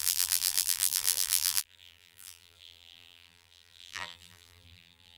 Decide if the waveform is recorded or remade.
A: remade